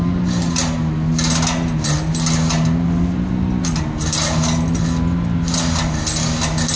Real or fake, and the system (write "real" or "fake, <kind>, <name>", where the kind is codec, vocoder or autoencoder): real